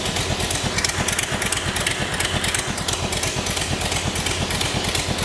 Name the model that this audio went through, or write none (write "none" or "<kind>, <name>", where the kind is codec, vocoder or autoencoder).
none